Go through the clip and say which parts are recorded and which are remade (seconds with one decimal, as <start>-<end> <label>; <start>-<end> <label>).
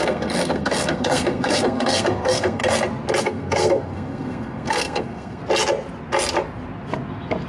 0.0-2.6 remade; 2.6-3.2 recorded; 3.2-5.4 remade; 5.4-7.5 recorded